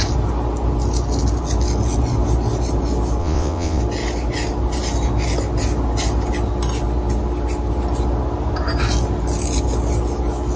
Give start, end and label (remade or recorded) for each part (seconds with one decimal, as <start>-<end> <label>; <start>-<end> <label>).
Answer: 0.0-3.2 recorded; 3.2-3.8 remade; 3.8-10.6 recorded